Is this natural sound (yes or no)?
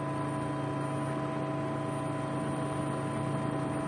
yes